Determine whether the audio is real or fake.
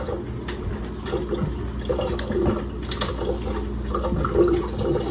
real